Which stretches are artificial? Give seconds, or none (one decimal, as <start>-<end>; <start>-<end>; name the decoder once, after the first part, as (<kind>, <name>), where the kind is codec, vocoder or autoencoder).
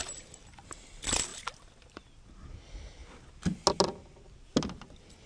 none